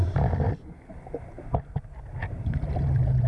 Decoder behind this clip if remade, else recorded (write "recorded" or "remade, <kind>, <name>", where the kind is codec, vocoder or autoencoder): recorded